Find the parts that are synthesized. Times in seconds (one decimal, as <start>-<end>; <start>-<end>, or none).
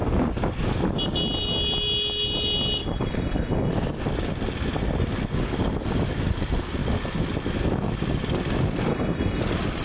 2.8-3.7; 8.9-9.4